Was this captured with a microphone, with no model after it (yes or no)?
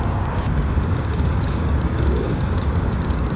no